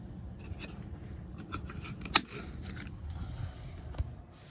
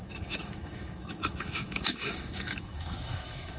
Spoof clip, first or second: second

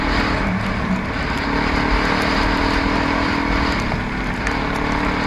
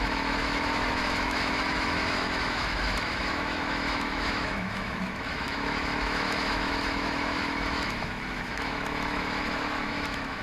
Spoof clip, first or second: second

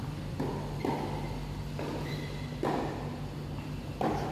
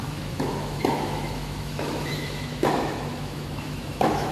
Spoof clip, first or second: second